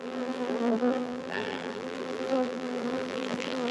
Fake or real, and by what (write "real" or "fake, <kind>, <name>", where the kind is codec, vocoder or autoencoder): fake, vocoder, BigVGAN v2